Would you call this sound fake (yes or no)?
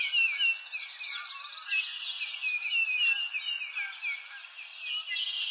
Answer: no